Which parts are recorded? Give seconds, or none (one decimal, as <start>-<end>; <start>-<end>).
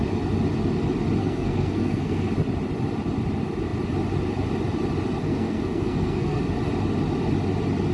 0.0-1.2; 2.3-5.2; 6.4-7.9